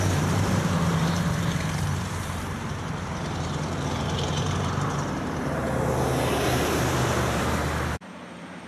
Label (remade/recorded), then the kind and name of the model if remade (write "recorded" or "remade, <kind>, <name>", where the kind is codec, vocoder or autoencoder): remade, vocoder, BigVGAN v2